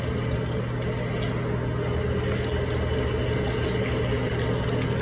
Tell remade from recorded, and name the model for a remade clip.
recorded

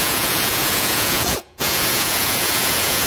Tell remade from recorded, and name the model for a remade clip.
remade, vocoder, Vocos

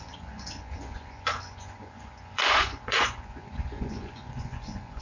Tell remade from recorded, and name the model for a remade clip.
remade, vocoder, Vocos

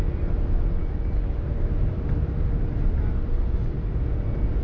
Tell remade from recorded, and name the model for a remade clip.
recorded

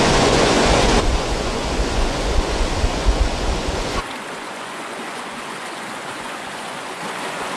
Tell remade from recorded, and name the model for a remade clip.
remade, vocoder, Vocos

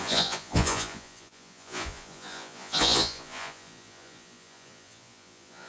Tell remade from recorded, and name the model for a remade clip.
remade, vocoder, Vocos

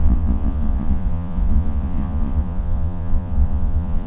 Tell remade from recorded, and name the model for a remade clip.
remade, vocoder, Vocos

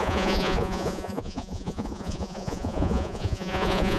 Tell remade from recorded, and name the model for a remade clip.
remade, vocoder, Vocos